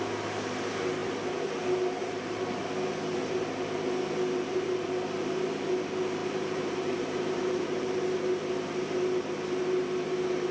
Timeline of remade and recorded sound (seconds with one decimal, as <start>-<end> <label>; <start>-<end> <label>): 0.0-2.0 recorded; 2.0-2.6 remade; 2.6-6.2 recorded; 6.2-8.0 remade; 8.0-10.5 recorded